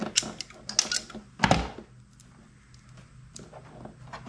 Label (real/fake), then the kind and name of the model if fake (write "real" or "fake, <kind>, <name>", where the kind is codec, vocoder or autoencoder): real